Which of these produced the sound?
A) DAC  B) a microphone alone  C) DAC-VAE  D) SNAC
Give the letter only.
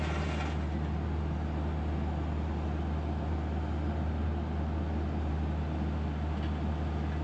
B